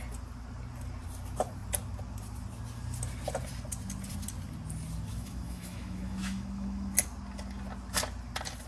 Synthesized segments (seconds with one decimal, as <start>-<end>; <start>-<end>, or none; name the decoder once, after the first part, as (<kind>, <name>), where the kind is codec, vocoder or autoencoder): 5.1-6.9 (autoencoder, DAC-VAE)